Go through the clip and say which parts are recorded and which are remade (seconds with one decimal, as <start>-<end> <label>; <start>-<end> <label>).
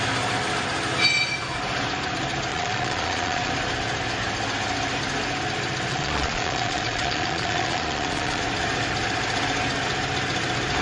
0.0-2.5 recorded; 2.5-3.5 remade; 3.5-5.9 recorded; 5.9-8.4 remade; 8.4-10.8 recorded